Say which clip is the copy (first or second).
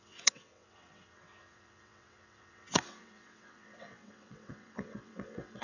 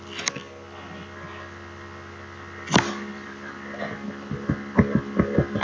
first